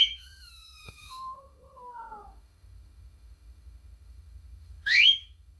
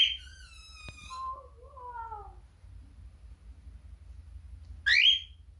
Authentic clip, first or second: second